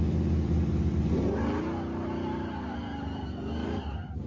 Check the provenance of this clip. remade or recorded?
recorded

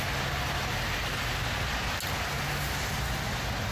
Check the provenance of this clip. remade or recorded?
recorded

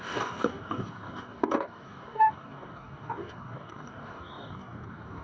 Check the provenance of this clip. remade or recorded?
remade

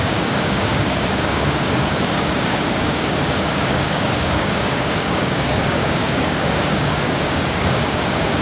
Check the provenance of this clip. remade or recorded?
remade